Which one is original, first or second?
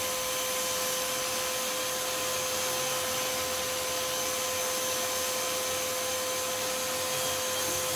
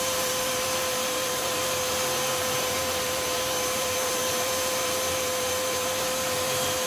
first